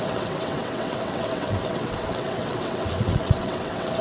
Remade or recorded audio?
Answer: remade